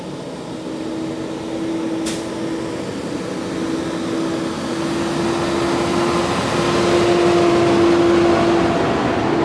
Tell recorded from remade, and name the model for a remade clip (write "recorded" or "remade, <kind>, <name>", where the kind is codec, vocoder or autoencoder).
recorded